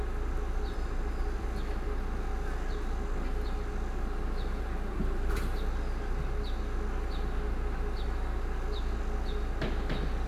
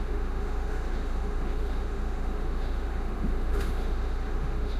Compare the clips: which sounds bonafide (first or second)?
first